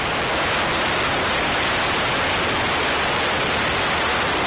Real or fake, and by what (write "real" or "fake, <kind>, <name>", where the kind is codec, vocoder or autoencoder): real